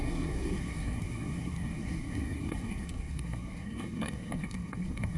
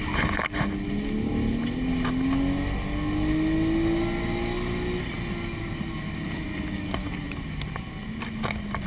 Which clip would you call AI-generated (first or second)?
first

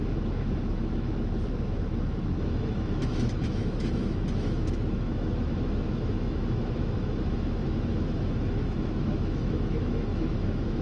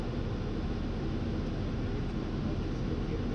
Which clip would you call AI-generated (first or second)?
first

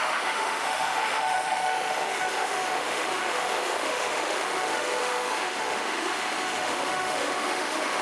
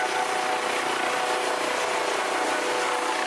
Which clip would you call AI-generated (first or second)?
first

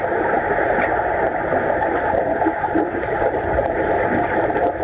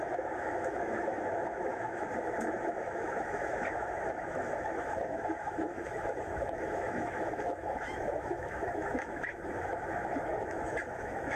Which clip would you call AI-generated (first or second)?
second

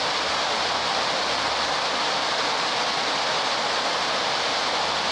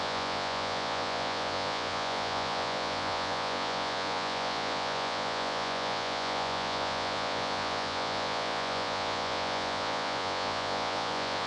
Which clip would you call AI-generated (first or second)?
second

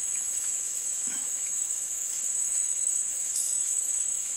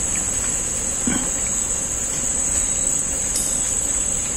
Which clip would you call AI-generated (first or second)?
first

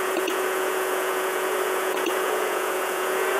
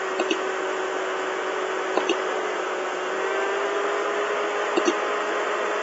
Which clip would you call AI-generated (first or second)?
first